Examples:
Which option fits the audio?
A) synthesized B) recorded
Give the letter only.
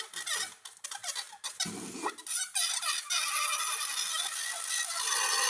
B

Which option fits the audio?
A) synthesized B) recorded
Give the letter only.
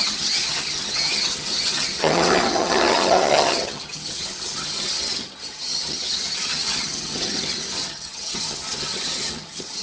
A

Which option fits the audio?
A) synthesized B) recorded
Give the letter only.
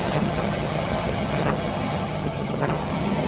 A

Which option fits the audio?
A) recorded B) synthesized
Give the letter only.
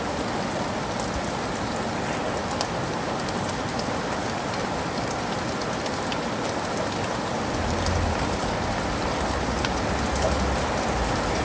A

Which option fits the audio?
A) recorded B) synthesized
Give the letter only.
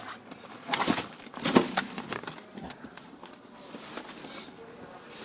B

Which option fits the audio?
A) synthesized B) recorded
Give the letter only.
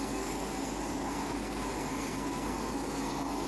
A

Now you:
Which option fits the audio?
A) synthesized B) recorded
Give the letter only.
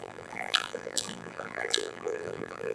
A